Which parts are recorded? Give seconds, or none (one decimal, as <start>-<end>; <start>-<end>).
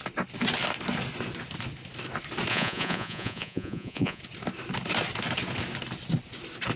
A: 0.0-2.5; 4.2-6.8